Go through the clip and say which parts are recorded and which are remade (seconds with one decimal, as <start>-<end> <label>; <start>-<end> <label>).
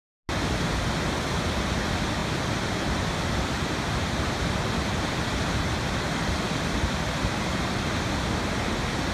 0.0-2.2 recorded; 2.2-7.2 remade; 7.2-9.1 recorded